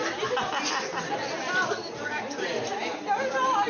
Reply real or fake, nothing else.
real